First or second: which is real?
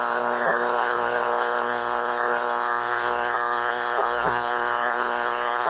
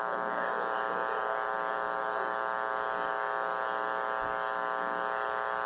second